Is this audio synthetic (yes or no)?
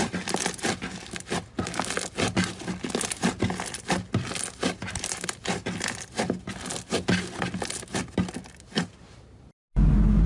no